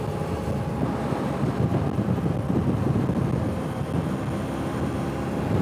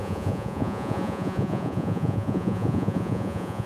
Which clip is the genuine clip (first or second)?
first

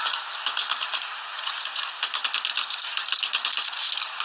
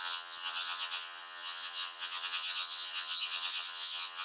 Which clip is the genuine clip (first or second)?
first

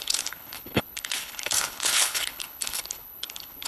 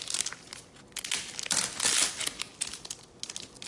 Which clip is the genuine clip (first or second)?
second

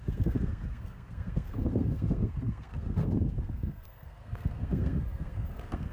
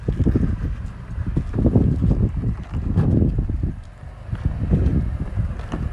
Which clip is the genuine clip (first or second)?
second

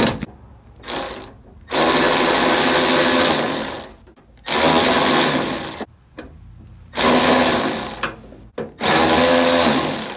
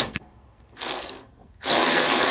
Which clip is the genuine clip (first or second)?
first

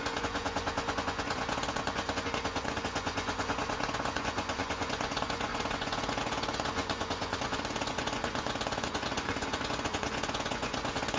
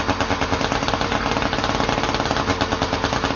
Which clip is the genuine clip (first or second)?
second